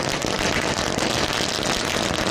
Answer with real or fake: real